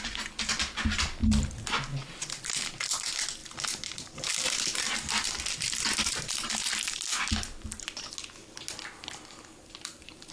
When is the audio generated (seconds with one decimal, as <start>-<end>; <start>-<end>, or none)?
none